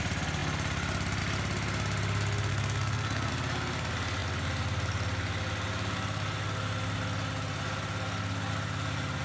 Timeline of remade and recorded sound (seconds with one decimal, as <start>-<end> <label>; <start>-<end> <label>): 0.0-2.5 recorded; 2.5-3.3 remade; 3.3-9.2 recorded